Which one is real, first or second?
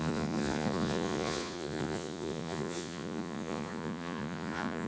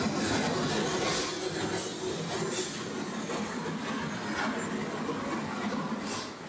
second